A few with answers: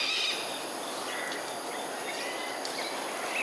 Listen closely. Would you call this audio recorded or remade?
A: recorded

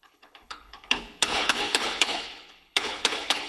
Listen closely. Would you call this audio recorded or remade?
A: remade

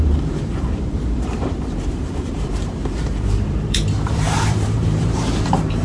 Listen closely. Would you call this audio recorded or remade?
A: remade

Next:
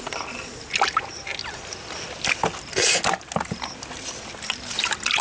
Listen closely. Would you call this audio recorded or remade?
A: recorded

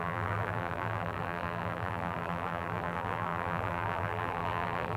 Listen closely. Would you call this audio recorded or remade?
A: remade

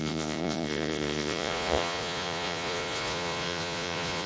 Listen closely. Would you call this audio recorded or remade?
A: remade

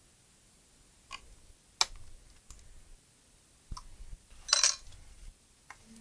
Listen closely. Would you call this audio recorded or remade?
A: recorded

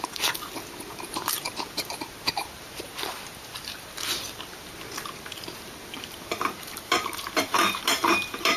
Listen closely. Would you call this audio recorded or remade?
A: remade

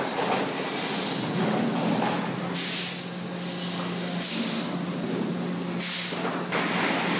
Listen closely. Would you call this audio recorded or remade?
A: recorded